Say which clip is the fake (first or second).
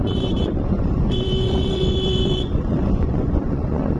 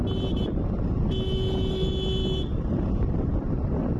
first